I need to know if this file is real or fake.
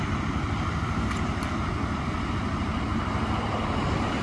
real